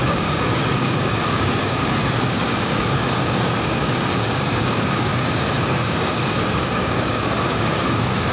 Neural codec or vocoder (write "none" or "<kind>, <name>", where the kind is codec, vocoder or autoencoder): codec, DAC